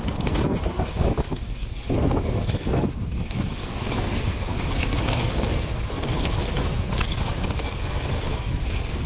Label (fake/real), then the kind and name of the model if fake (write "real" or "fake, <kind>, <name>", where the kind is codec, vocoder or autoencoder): fake, codec, SNAC